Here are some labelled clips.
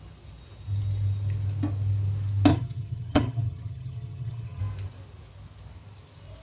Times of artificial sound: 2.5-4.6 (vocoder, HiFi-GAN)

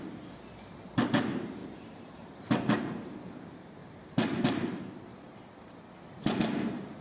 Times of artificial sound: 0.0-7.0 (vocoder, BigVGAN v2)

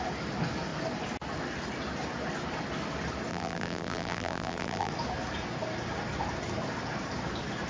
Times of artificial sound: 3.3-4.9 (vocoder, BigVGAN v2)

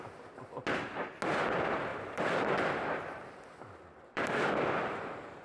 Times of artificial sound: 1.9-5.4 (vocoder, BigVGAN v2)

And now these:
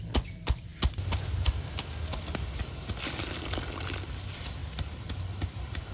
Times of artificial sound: 4.6-5.9 (vocoder, BigVGAN v2)

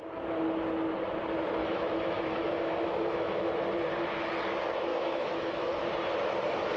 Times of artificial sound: 1.6-3.5 (autoencoder, DAC-VAE); 4.9-5.8